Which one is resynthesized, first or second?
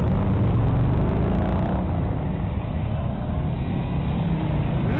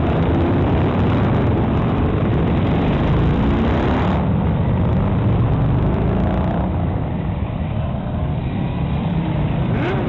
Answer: second